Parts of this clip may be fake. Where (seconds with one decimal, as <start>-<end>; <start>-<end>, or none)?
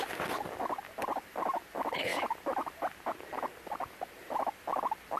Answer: none